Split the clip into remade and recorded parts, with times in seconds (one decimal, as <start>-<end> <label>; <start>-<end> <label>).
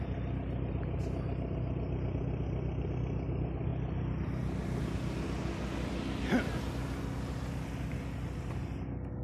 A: 0.0-9.2 recorded